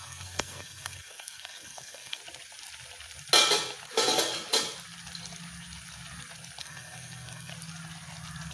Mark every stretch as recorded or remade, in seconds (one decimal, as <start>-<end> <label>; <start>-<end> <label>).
0.0-2.2 remade; 2.2-6.6 recorded; 6.6-7.5 remade; 7.5-8.5 recorded